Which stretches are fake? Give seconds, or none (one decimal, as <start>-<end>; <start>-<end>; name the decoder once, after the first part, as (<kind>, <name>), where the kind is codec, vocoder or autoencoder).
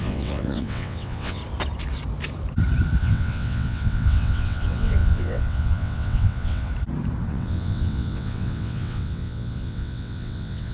0.0-1.4 (vocoder, WaveNeXt); 3.0-6.7; 7.3-10.7